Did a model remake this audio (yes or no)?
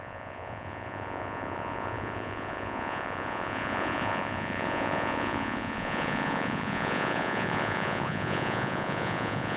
yes